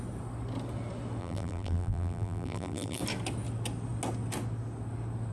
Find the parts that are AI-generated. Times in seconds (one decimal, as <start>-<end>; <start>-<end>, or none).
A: 1.2-3.0